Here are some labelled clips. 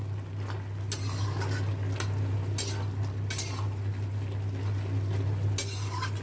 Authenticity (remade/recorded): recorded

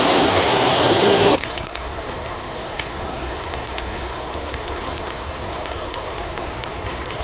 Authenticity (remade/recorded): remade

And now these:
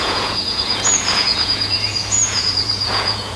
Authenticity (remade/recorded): remade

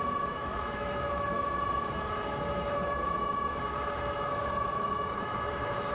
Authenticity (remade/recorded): remade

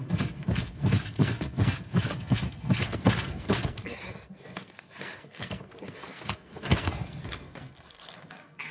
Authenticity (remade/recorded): remade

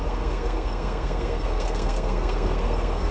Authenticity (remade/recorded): remade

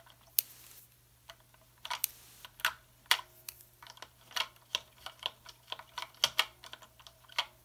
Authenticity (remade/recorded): recorded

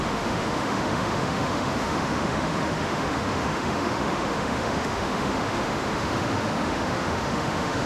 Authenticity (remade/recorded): remade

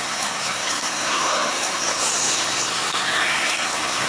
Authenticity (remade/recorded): remade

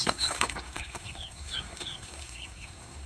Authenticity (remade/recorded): remade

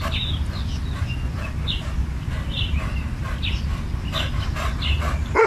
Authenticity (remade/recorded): recorded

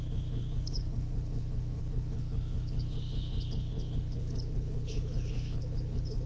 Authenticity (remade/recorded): remade